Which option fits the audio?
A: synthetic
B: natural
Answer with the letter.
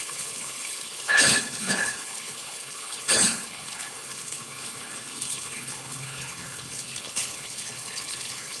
A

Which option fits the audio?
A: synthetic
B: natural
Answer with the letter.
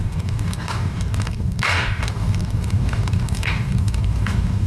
A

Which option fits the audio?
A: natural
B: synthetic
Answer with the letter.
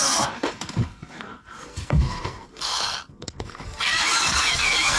B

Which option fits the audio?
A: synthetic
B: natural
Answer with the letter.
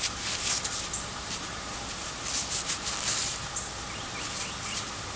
B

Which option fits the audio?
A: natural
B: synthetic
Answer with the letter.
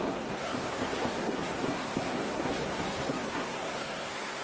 B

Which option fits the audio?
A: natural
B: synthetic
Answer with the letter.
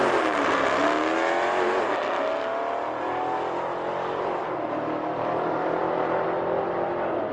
A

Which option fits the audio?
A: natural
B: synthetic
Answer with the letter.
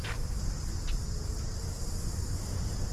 A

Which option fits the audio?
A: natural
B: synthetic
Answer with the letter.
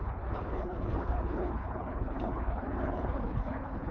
B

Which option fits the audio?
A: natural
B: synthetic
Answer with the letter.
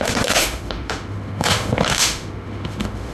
B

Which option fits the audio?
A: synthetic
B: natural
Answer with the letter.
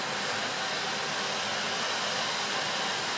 B